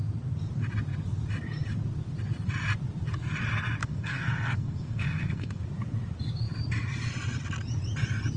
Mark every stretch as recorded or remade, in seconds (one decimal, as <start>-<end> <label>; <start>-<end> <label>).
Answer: 0.0-3.8 recorded; 3.8-5.6 remade; 5.6-8.4 recorded